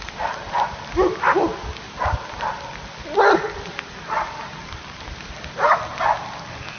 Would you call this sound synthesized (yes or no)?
no